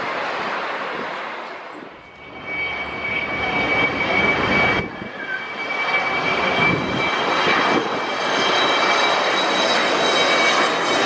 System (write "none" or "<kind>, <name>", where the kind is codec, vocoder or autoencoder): none